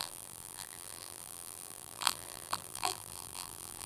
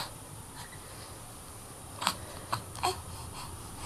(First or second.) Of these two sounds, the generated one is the first